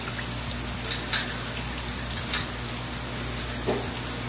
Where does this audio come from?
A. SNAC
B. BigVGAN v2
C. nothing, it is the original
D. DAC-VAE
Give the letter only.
C